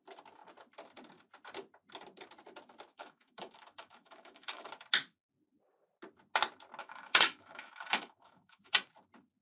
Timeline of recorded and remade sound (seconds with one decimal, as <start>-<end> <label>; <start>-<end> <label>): 0.0-2.9 recorded; 2.9-4.7 remade; 4.7-6.8 recorded; 6.8-8.7 remade; 8.7-9.4 recorded